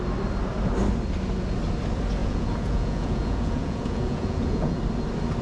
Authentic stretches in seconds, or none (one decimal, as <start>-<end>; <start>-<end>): 0.0-2.2; 4.8-5.4